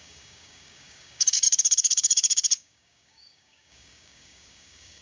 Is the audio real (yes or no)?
no